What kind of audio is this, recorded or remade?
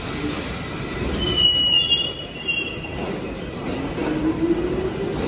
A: recorded